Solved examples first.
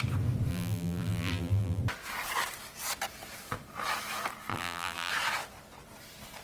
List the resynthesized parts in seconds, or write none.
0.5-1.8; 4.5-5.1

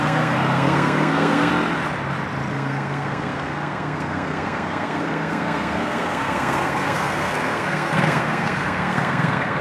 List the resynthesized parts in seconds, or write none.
0.0-1.5; 2.5-9.6

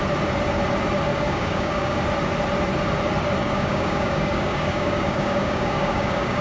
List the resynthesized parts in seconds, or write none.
1.1-2.0; 3.4-6.4

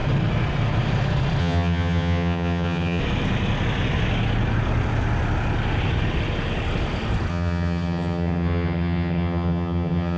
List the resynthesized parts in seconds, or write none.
1.4-3.0; 7.3-10.2

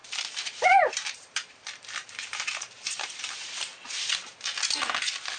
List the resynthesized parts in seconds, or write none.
0.0-3.2; 3.7-4.6

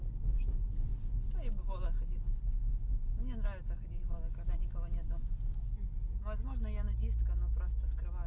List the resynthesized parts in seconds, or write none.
none

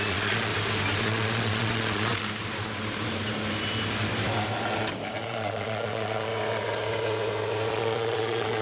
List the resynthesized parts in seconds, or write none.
0.0-0.5; 1.0-2.1; 5.2-6.3; 7.7-8.6